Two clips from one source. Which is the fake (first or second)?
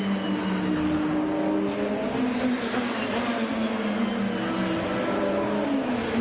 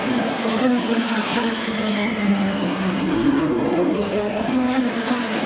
second